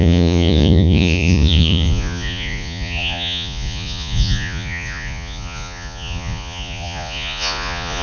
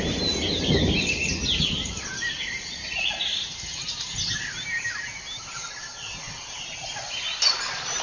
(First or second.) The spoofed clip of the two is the first